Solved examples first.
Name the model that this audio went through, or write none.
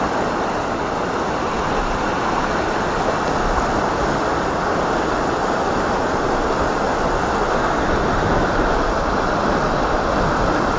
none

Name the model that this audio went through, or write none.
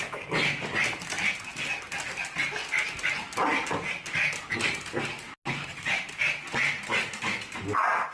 none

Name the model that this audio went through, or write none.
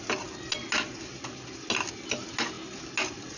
none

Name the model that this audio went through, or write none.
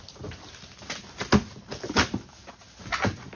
none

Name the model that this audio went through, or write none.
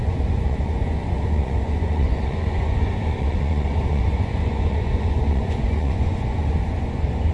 vocoder, Vocos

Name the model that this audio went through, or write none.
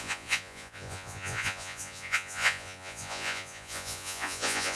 vocoder, Vocos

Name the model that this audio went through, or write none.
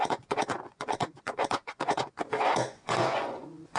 vocoder, Vocos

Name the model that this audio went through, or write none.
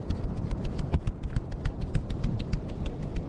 none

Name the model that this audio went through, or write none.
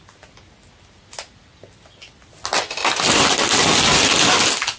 none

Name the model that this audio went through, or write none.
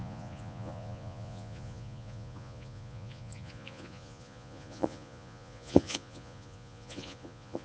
vocoder, Vocos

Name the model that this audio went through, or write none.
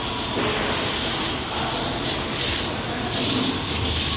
none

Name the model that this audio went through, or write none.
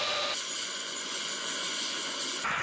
vocoder, Vocos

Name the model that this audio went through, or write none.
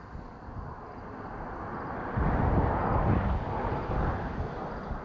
none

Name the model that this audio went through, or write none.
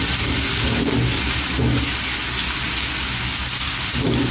none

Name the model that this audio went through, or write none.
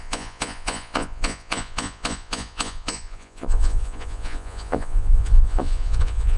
vocoder, Vocos